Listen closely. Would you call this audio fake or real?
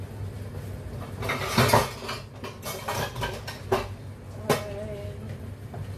real